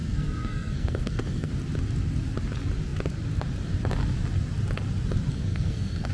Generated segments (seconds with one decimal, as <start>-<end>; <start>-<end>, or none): 0.0-1.5; 5.3-6.1